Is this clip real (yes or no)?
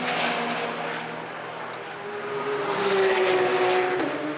yes